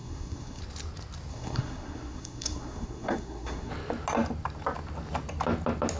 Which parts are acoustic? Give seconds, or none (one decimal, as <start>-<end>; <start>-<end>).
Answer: 0.6-1.3; 3.7-6.0